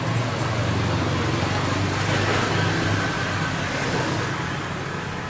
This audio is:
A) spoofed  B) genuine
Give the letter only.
B